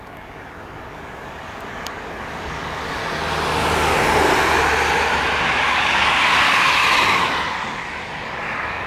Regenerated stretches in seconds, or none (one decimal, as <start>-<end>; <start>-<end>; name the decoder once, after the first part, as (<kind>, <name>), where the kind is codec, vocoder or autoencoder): 0.0-3.0 (codec, DAC); 5.4-6.8; 7.5-8.9